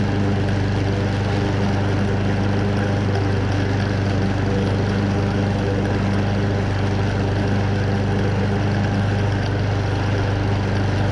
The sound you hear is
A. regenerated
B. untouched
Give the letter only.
B